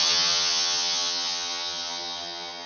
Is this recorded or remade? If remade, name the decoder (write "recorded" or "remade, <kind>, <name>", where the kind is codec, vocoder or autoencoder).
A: remade, vocoder, HiFi-GAN